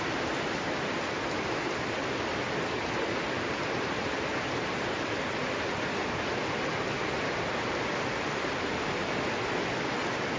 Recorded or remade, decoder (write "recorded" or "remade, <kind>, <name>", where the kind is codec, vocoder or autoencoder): recorded